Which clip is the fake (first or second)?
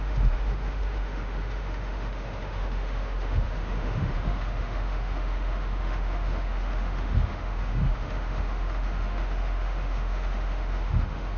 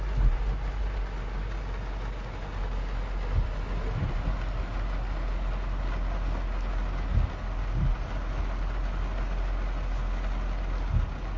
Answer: first